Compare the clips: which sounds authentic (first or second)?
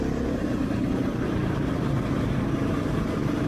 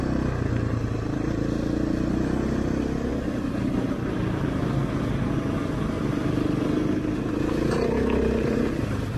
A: second